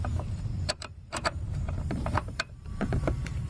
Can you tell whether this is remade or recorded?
remade